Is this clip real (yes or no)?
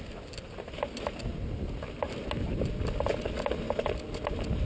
yes